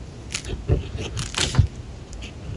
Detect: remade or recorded recorded